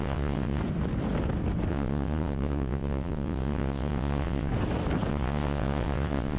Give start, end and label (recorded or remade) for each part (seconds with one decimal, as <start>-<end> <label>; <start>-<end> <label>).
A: 0.0-0.6 remade; 0.6-1.7 recorded; 1.7-4.5 remade; 4.5-5.1 recorded; 5.1-6.4 remade